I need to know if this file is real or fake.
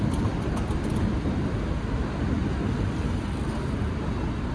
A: real